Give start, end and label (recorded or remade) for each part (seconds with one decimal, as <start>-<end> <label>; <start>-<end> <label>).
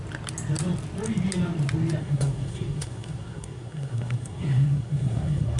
0.0-2.0 recorded; 2.0-5.6 remade